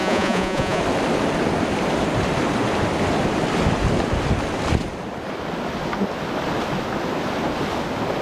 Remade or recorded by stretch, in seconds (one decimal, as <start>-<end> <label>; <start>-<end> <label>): 0.0-0.8 remade; 0.8-8.2 recorded